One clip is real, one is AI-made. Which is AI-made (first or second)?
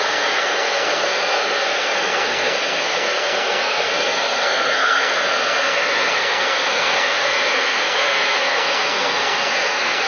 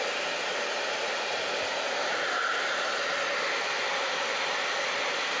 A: first